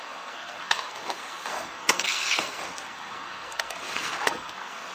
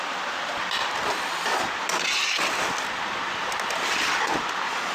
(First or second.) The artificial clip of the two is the first